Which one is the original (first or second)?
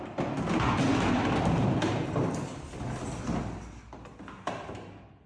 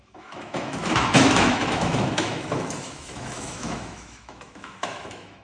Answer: first